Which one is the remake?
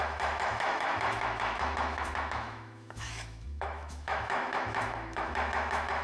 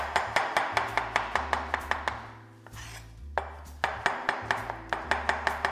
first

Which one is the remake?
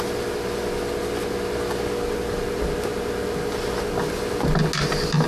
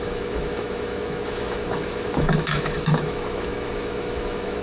second